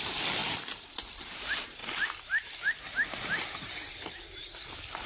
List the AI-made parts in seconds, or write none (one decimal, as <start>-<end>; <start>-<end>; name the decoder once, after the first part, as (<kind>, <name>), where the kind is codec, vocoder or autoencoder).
0.4-1.2 (vocoder, BigVGAN v2); 1.8-5.1